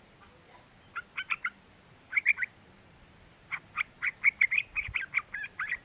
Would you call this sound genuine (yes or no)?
yes